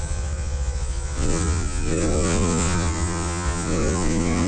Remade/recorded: remade